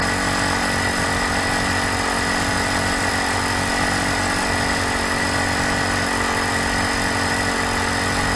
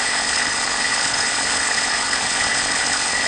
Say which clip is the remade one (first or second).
second